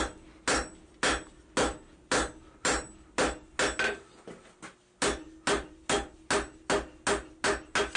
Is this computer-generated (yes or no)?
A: no